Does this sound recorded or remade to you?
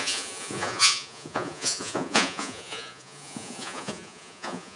remade